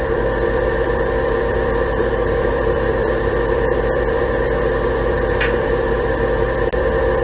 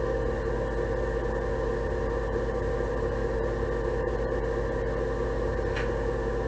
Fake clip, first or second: first